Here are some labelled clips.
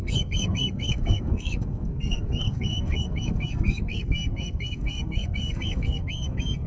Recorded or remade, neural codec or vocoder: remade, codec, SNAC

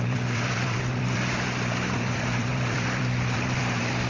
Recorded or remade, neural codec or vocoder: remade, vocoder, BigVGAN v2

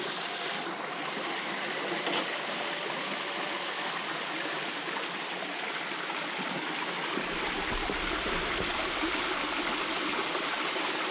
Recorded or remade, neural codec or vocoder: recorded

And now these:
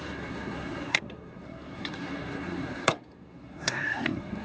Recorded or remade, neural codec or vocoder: remade, codec, SNAC